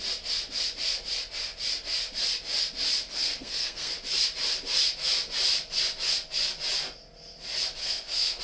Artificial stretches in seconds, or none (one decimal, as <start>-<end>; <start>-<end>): 3.1-3.9; 7.8-8.4